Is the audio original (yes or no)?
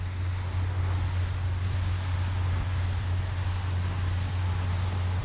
yes